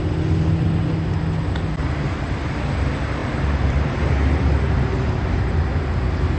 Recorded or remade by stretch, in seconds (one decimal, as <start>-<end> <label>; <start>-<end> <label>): 0.0-1.7 recorded; 1.7-2.5 remade; 2.5-3.2 recorded; 3.2-5.9 remade; 5.9-6.4 recorded